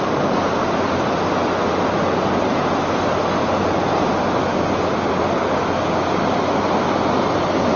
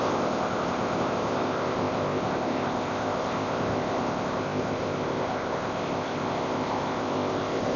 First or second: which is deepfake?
second